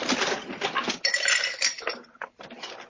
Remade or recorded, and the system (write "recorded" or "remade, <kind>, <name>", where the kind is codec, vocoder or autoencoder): recorded